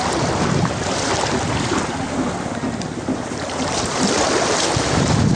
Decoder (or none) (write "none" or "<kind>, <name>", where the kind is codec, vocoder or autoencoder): none